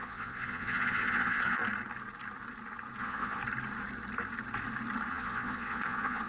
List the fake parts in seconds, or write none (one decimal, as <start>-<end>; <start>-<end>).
0.0-1.6; 3.0-3.4; 5.1-6.3